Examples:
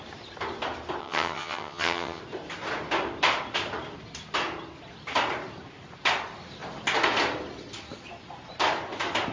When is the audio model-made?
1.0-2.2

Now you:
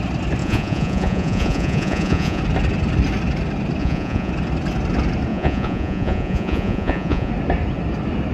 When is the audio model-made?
0.4-2.4; 3.8-4.3; 5.3-7.3